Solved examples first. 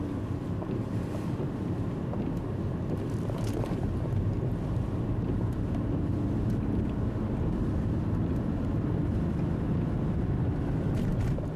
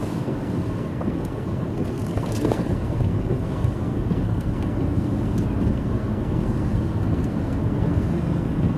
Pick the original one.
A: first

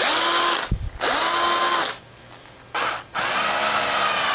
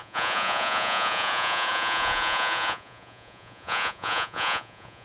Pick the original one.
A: first